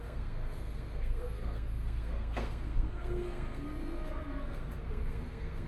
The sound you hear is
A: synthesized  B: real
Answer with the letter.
A